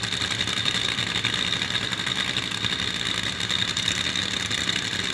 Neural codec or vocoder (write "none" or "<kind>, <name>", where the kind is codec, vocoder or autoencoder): vocoder, BigVGAN v2